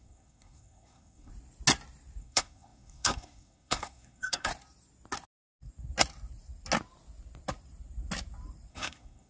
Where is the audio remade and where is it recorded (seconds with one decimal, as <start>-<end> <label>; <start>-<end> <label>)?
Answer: 0.0-1.3 remade; 1.3-2.2 recorded; 2.2-4.5 remade; 4.5-8.7 recorded; 8.7-9.3 remade